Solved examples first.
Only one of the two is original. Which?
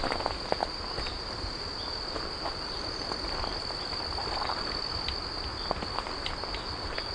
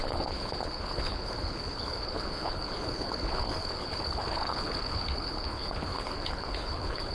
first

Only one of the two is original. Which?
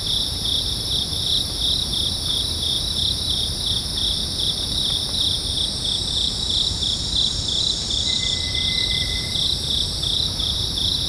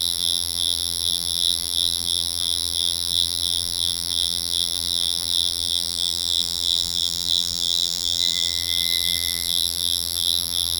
first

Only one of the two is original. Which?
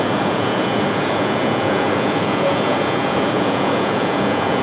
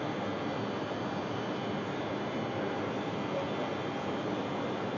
second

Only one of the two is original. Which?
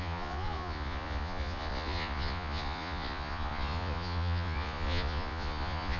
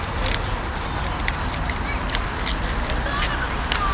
second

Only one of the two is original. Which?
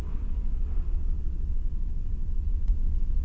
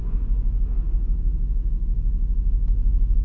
second